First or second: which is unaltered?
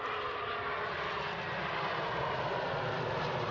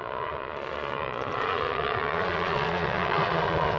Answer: first